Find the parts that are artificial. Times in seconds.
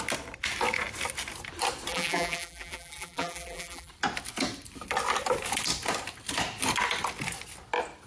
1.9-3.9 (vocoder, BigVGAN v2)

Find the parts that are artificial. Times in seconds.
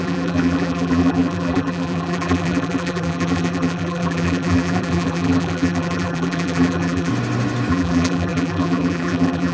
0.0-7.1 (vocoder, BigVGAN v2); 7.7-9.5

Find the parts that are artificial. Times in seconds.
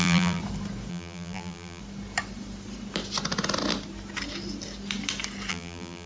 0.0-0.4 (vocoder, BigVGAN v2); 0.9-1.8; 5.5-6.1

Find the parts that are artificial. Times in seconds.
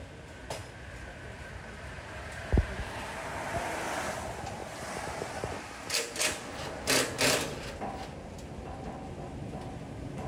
none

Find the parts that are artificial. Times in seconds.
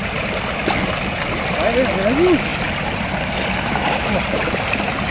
2.5-3.1 (vocoder, BigVGAN v2)